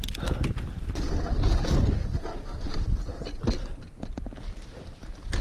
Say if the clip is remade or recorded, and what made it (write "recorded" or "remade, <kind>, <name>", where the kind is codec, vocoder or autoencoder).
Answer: recorded